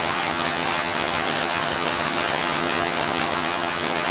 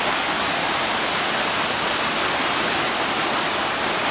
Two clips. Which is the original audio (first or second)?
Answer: second